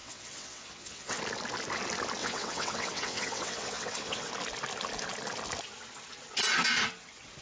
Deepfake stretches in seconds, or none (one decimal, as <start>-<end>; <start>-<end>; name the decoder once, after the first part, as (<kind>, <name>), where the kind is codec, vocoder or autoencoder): 0.0-1.2 (vocoder, WaveNeXt); 2.2-4.3